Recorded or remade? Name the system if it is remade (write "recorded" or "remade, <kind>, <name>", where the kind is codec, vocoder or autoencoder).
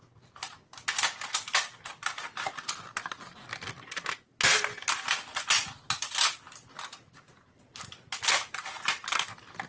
recorded